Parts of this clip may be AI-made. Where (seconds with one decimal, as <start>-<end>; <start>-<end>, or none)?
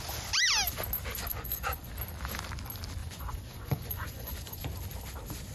1.3-1.9; 3.0-4.6